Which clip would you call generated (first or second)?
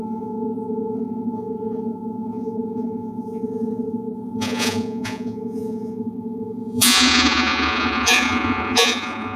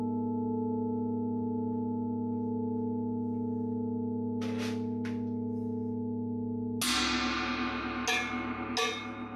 first